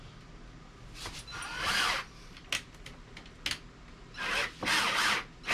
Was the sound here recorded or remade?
recorded